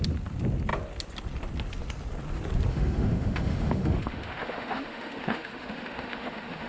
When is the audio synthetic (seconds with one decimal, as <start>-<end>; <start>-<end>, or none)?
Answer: 2.7-6.7